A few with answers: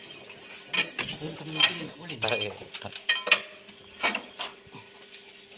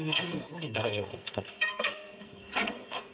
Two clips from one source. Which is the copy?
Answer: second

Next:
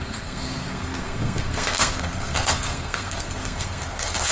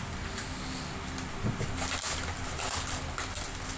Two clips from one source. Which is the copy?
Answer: first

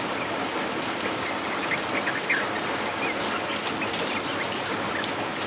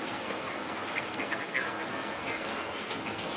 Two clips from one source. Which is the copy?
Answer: second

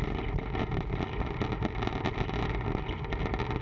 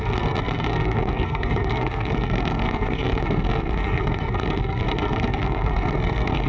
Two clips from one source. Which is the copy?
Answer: second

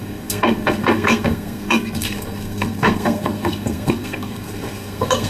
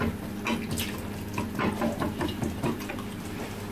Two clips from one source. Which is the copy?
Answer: first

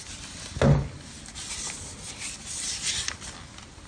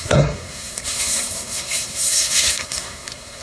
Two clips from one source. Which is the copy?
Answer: second